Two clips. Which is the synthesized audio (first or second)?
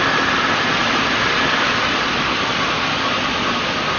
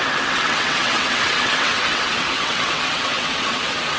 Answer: second